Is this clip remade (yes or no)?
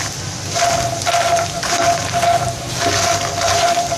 no